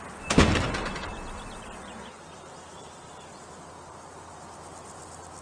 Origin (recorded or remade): recorded